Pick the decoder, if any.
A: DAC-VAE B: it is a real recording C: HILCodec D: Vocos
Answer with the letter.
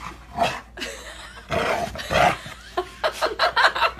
B